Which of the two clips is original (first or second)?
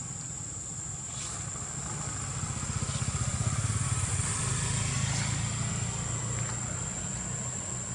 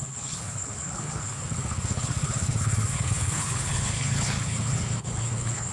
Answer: first